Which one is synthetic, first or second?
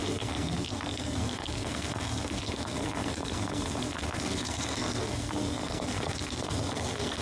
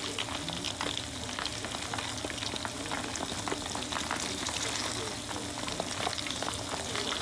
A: first